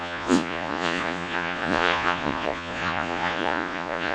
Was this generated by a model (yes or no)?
yes